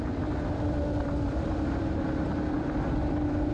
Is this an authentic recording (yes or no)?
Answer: no